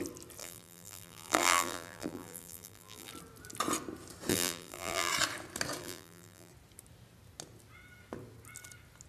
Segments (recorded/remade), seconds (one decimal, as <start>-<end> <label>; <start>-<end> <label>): 0.0-0.4 recorded; 0.4-3.1 remade; 3.1-4.3 recorded; 4.3-5.1 remade; 5.1-5.8 recorded; 5.8-6.5 remade; 6.5-9.1 recorded